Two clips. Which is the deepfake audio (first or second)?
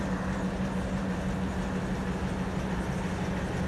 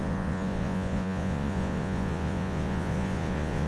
second